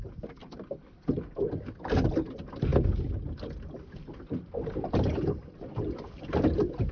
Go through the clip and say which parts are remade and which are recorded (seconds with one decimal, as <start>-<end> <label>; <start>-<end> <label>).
0.0-6.9 recorded

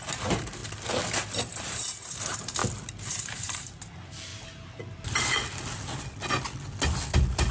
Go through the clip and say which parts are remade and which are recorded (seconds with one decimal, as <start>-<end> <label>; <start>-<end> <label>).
0.0-0.6 remade; 0.6-1.2 recorded; 1.2-2.6 remade; 2.6-3.1 recorded; 3.1-4.3 remade; 4.3-7.5 recorded

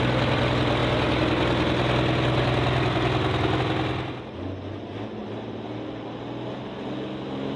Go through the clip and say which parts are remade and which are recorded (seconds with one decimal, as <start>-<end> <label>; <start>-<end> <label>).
0.0-7.6 recorded

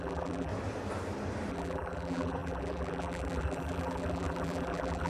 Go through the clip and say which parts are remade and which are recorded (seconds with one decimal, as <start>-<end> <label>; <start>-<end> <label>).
0.0-0.5 remade; 0.5-1.5 recorded; 1.5-5.1 remade

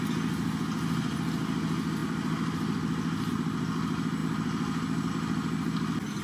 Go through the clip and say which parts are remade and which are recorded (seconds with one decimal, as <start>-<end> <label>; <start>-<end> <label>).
0.0-6.2 recorded

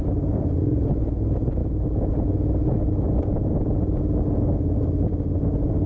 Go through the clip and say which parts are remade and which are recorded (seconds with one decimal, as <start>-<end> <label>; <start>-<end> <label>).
0.0-5.9 recorded

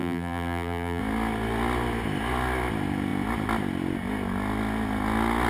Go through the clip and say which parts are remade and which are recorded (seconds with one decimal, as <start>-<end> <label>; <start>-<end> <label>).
0.0-1.0 remade; 1.0-5.5 recorded

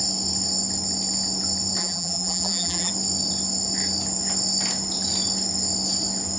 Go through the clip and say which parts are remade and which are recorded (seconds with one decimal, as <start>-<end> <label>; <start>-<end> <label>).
0.0-1.8 recorded; 1.8-2.9 remade; 2.9-6.4 recorded